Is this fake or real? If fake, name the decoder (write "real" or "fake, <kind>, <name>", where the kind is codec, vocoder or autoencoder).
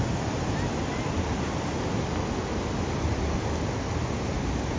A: real